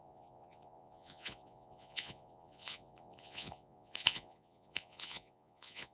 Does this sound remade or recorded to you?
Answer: remade